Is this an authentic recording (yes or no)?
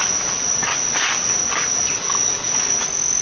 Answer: yes